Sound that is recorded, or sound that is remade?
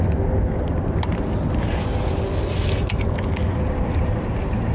recorded